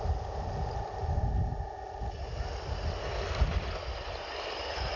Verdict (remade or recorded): recorded